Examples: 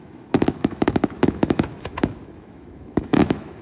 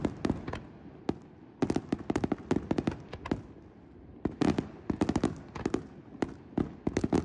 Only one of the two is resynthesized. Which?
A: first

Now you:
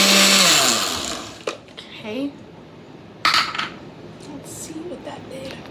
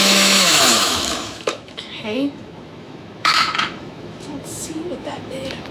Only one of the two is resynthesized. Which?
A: second